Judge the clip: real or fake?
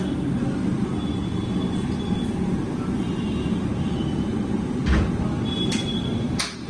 real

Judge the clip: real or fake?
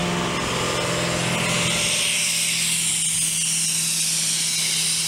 real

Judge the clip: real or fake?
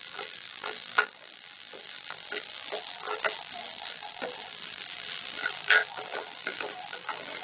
fake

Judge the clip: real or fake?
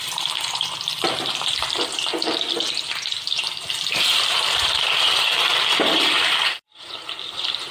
fake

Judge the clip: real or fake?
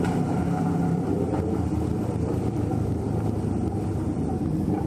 fake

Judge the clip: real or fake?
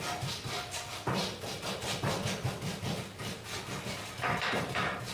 real